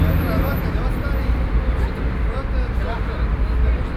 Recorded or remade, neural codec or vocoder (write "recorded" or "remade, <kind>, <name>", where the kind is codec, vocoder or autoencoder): recorded